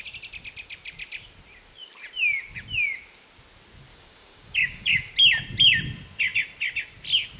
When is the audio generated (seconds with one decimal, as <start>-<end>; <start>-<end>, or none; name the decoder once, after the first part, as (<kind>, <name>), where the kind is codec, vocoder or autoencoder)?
3.9-5.1 (codec, DAC)